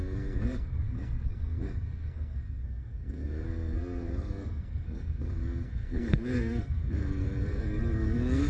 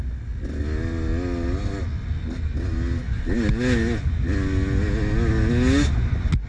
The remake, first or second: first